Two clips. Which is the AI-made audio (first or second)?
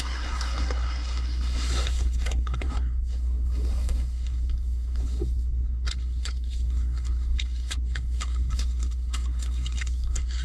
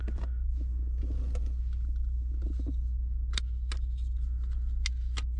first